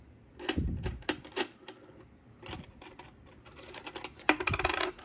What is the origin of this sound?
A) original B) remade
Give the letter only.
A